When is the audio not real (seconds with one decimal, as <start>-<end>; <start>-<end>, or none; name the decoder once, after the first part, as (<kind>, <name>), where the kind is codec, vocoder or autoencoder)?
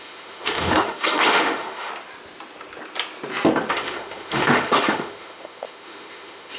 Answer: 0.0-1.9 (autoencoder, DAC-VAE); 3.7-6.6